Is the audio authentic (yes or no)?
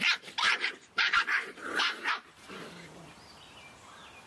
no